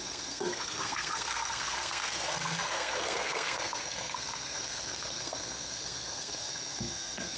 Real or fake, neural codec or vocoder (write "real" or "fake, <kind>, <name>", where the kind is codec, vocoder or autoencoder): fake, codec, SNAC